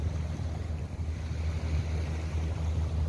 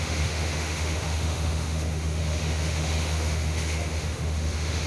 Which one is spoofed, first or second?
second